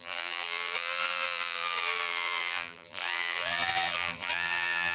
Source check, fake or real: fake